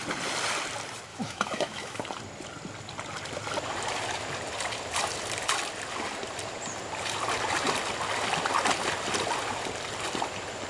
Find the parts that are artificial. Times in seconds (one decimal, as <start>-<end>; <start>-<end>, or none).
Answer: 1.1-2.0